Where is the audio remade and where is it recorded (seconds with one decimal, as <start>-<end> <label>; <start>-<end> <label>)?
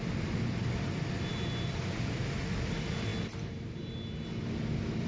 0.0-3.1 remade; 3.1-5.1 recorded